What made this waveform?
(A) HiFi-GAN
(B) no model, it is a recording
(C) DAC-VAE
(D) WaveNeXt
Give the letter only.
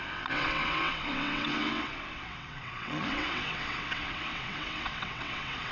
D